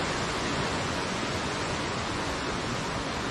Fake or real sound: fake